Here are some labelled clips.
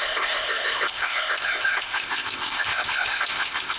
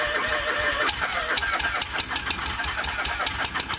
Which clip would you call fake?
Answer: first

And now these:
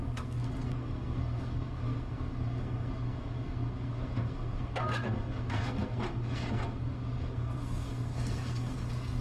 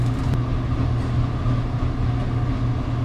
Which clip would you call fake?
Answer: first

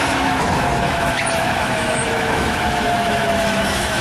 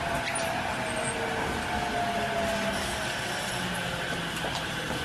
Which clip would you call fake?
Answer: first